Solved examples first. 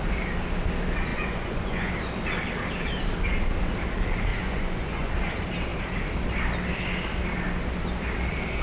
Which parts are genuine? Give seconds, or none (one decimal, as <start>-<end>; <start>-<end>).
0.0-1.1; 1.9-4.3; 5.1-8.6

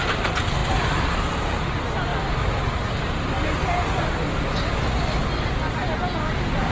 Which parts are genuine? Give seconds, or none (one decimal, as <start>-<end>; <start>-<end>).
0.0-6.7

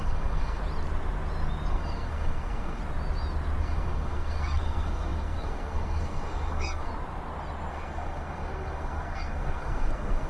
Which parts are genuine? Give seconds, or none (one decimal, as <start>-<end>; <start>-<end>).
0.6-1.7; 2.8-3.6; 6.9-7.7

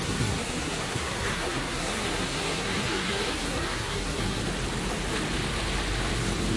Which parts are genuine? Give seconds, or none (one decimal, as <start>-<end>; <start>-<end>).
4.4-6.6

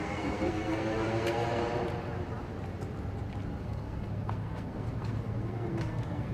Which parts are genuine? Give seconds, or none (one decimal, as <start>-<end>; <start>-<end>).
1.6-3.6

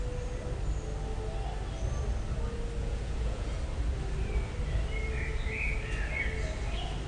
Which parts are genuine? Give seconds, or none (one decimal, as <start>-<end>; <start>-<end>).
0.0-2.8; 3.6-7.1